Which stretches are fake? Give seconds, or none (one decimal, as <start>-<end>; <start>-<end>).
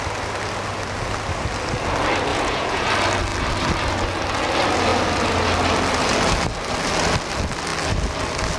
2.3-2.9